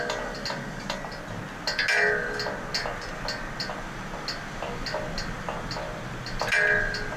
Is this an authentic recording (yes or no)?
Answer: yes